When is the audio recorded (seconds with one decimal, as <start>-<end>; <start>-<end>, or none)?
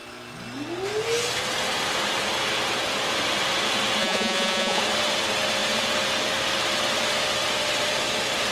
0.0-4.0; 4.8-8.5